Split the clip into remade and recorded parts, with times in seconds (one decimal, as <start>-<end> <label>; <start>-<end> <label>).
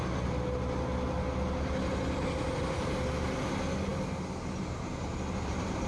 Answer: 0.0-5.9 recorded